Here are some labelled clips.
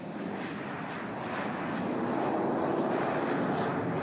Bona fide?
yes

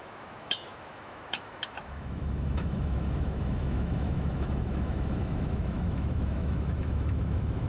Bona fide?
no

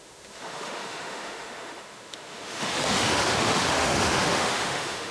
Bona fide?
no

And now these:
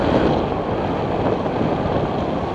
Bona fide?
yes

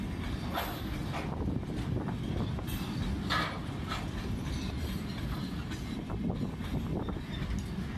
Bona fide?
yes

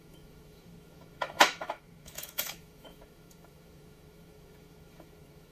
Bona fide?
no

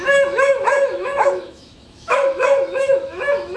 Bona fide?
no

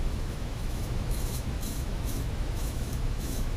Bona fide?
no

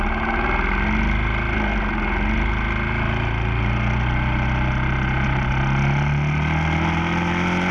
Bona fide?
yes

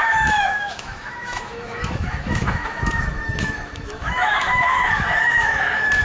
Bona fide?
no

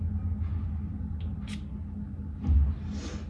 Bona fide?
yes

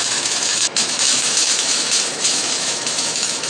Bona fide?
no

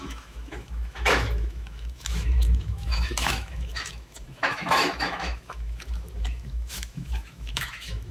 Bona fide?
no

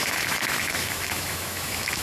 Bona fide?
no